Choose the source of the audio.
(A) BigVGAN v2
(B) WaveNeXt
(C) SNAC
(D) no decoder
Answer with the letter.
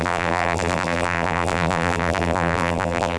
A